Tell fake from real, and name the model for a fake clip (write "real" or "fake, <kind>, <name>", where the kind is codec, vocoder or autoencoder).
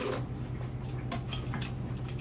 real